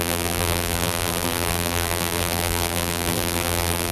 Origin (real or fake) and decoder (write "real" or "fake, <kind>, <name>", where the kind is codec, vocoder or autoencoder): fake, vocoder, BigVGAN v2